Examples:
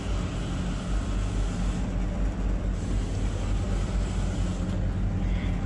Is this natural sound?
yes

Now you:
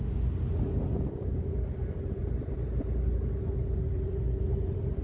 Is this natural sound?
yes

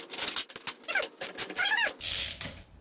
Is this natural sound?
yes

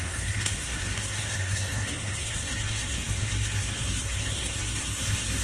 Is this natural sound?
no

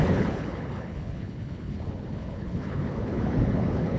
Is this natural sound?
no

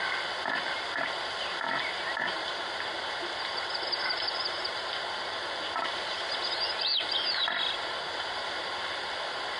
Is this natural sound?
yes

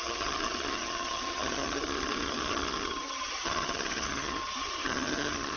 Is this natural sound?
no